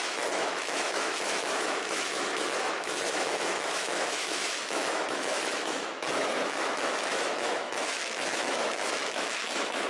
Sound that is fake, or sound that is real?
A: fake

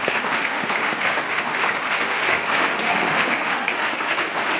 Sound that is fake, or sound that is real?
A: fake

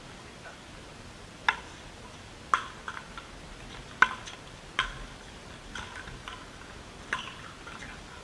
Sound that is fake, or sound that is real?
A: real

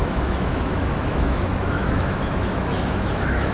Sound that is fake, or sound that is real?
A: fake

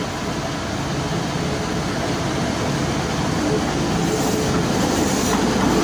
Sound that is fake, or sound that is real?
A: real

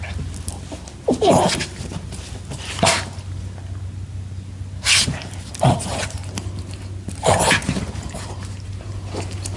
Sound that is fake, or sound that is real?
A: real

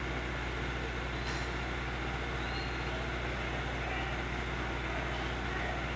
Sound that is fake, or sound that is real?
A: real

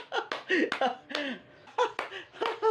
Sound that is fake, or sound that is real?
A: real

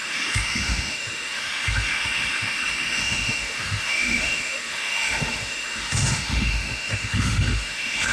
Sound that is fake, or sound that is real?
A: fake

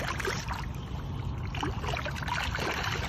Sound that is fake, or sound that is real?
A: real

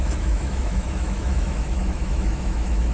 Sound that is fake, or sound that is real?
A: fake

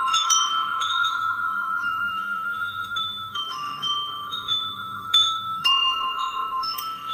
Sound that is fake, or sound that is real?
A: fake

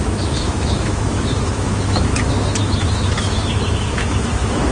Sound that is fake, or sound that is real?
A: fake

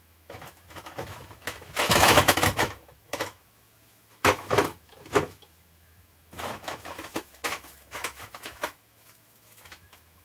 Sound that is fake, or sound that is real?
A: fake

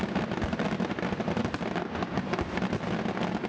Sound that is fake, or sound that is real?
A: real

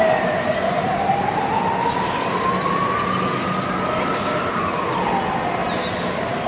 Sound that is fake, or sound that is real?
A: real